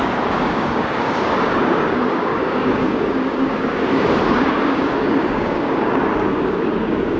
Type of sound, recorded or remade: remade